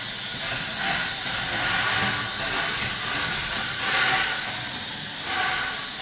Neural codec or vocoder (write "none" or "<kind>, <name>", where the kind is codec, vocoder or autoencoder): none